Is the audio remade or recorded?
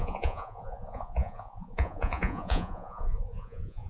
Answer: remade